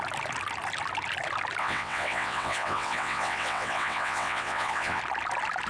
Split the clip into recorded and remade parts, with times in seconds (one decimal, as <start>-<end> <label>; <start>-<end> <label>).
0.0-1.6 recorded; 1.6-5.0 remade; 5.0-5.7 recorded